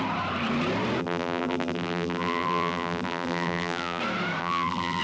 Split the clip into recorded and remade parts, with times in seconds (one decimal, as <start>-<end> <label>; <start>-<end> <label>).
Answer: 0.0-1.0 recorded; 1.0-4.0 remade; 4.0-4.4 recorded; 4.4-5.0 remade